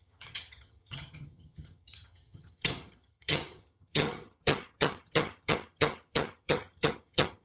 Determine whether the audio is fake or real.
fake